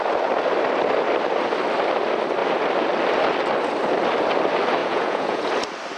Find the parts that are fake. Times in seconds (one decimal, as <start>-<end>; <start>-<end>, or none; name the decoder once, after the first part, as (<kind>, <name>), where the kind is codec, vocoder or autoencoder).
4.8-5.5 (vocoder, Vocos)